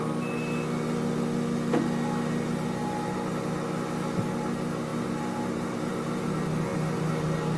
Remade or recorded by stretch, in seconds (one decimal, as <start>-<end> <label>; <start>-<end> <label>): 0.0-7.6 recorded

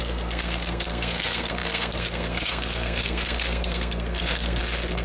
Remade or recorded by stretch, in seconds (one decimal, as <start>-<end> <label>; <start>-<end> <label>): 0.0-5.0 remade

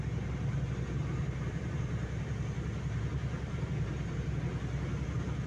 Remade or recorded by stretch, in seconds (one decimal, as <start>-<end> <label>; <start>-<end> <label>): 0.0-1.0 recorded; 1.0-2.3 remade; 2.3-3.2 recorded; 3.2-4.4 remade; 4.4-5.5 recorded

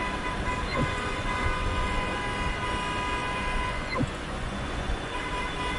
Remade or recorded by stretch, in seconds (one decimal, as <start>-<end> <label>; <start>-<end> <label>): 0.0-0.7 recorded; 0.7-2.2 remade; 2.2-3.2 recorded; 3.2-5.2 remade; 5.2-5.8 recorded

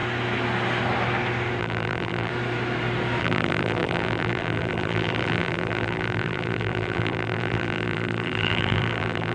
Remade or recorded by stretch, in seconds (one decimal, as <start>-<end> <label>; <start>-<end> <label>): 0.0-1.6 recorded; 1.6-2.3 remade; 2.3-3.2 recorded; 3.2-9.3 remade

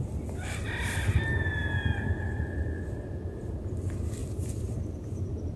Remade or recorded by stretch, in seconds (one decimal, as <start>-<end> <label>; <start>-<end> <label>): 0.0-4.2 recorded; 4.2-5.6 remade

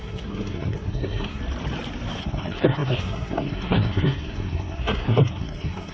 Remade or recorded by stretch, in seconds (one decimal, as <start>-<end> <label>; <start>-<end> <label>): 0.0-1.4 remade; 1.4-2.2 recorded; 2.2-5.9 remade

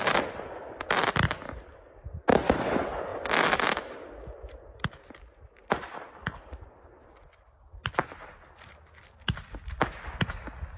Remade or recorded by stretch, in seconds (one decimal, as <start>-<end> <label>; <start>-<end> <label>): 0.0-3.1 recorded; 3.1-4.1 remade; 4.1-10.8 recorded